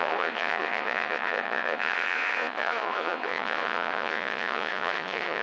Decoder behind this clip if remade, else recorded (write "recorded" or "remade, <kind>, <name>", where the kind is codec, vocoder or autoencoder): remade, vocoder, Vocos